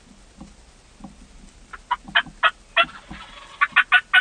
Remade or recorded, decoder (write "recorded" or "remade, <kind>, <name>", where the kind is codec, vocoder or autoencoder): recorded